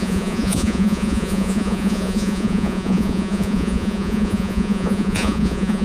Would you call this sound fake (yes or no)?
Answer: yes